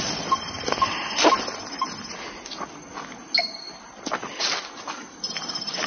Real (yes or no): yes